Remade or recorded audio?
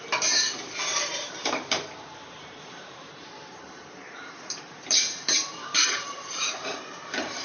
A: remade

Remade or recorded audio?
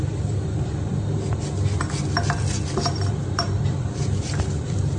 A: remade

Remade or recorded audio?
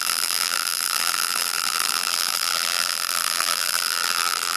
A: remade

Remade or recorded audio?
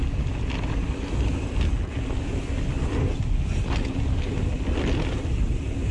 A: recorded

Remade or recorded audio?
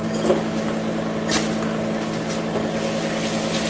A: recorded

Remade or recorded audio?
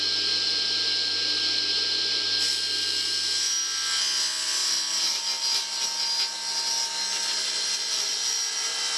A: recorded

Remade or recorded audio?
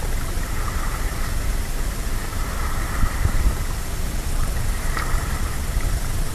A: remade